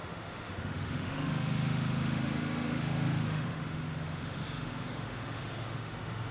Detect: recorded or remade remade